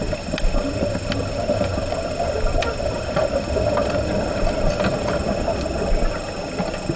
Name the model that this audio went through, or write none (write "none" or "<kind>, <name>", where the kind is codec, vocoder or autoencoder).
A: none